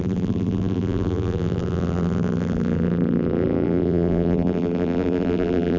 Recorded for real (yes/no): no